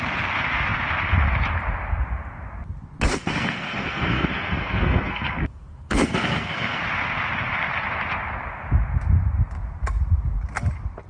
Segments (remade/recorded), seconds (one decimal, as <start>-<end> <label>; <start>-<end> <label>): 0.0-3.1 recorded; 3.1-6.8 remade; 6.8-11.1 recorded